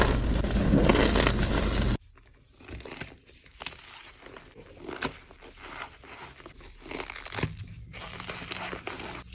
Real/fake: real